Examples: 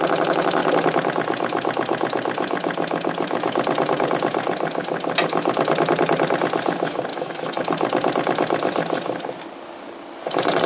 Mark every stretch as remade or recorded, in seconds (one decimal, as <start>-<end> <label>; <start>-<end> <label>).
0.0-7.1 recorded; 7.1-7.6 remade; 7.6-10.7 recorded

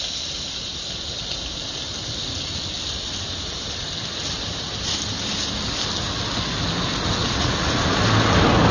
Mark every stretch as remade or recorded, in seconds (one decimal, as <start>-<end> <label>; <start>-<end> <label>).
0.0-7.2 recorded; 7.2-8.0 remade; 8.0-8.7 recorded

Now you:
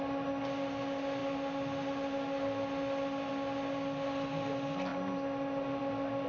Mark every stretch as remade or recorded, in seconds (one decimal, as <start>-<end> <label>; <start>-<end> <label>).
0.0-6.3 recorded

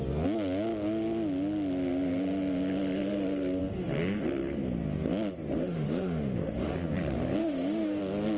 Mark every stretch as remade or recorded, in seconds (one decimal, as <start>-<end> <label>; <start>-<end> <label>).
0.0-5.6 recorded; 5.6-6.7 remade; 6.7-7.4 recorded; 7.4-8.0 remade; 8.0-8.4 recorded

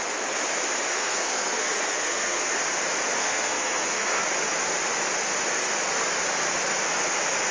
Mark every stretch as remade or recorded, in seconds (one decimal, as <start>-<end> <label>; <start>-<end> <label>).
0.0-0.9 recorded; 0.9-2.5 remade; 2.5-3.2 recorded; 3.2-4.2 remade; 4.2-7.5 recorded

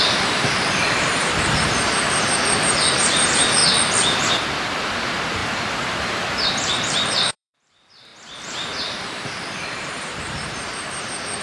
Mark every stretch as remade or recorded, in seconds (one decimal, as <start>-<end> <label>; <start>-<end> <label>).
0.0-3.6 remade; 3.6-4.3 recorded; 4.3-11.4 remade

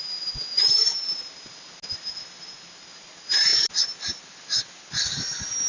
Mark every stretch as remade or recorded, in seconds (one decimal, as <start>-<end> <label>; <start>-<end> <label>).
0.0-5.7 recorded